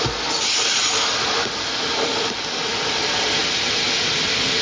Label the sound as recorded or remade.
remade